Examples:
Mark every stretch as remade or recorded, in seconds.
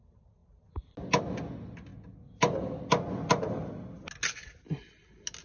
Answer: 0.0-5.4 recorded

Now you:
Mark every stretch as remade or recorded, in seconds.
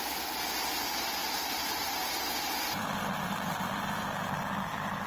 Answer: 0.0-1.2 recorded; 1.2-2.8 remade; 2.8-5.1 recorded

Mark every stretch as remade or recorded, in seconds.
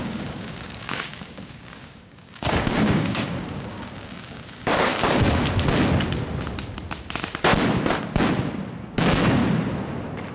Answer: 0.0-4.9 remade; 4.9-8.8 recorded; 8.8-9.4 remade; 9.4-10.3 recorded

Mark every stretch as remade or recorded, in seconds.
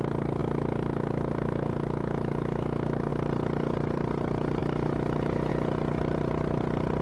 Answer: 0.0-0.4 recorded; 0.4-3.1 remade; 3.1-4.6 recorded; 4.6-5.5 remade; 5.5-7.0 recorded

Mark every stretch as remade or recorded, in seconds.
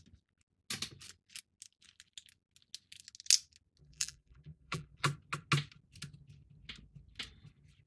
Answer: 0.0-3.8 recorded; 3.8-5.0 remade; 5.0-7.9 recorded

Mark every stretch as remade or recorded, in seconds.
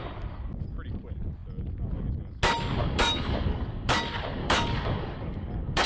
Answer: 0.0-2.8 recorded; 2.8-4.0 remade; 4.0-4.4 recorded; 4.4-5.9 remade